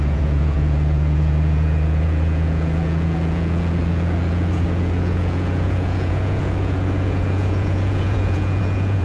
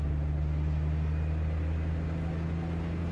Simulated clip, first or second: first